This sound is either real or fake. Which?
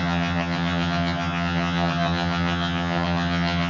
fake